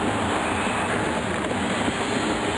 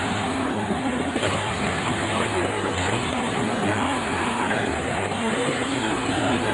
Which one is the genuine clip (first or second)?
first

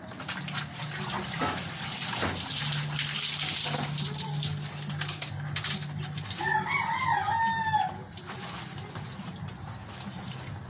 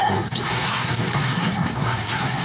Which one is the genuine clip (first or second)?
first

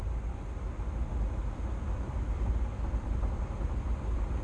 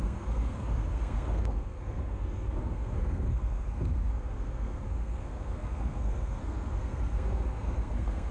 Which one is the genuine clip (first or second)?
first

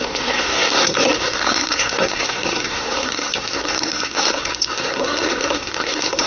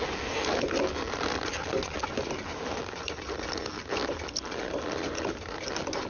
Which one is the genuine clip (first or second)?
second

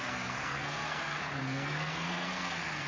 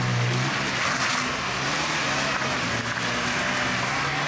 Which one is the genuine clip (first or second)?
second